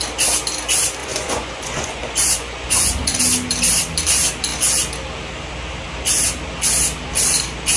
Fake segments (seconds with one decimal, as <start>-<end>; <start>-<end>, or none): 1.0-3.2